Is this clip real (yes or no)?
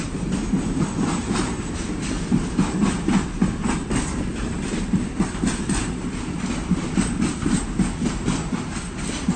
yes